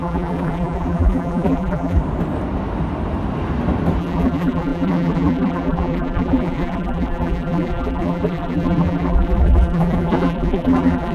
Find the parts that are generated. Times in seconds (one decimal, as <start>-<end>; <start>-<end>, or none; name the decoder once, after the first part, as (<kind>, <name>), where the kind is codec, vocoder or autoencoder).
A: 0.0-2.0 (vocoder, BigVGAN v2); 4.0-11.1